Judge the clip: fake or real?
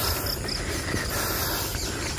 real